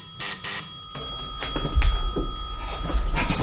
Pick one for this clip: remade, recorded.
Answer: recorded